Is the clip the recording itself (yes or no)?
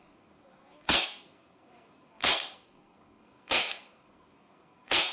no